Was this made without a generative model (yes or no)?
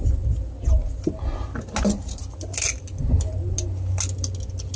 yes